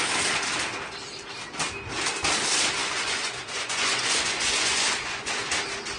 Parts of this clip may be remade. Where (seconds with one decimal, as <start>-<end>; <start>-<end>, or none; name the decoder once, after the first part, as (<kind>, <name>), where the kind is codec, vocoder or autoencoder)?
2.8-5.3 (vocoder, Vocos)